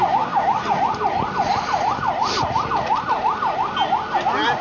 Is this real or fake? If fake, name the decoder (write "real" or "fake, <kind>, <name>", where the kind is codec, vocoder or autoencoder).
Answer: real